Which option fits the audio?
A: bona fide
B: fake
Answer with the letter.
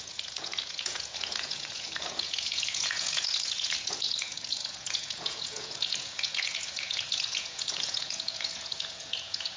B